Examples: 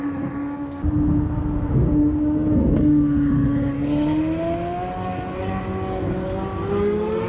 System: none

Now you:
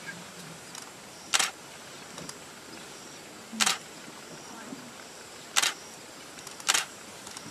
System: vocoder, BigVGAN v2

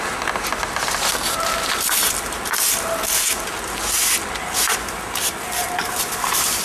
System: none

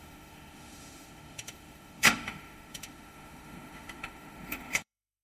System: autoencoder, DAC-VAE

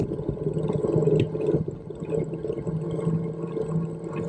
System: none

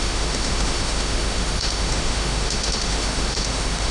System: autoencoder, DAC-VAE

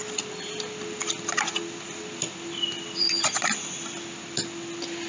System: none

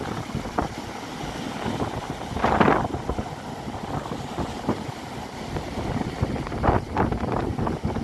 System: none